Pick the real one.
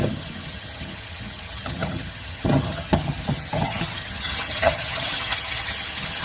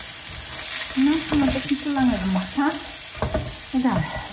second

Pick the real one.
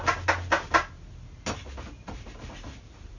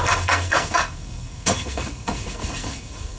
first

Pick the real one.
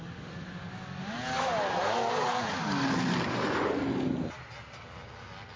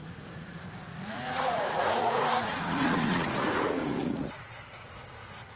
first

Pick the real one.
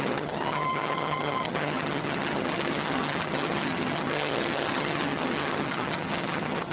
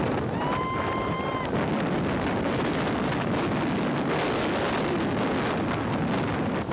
second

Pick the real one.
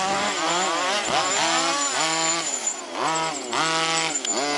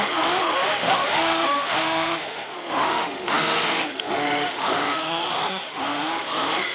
first